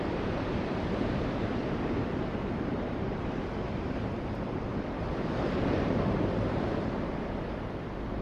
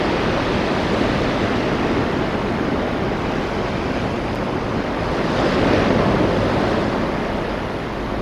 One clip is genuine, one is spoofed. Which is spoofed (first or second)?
first